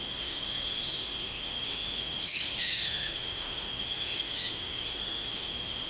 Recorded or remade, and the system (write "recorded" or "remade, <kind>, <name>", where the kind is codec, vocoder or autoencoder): remade, autoencoder, DAC-VAE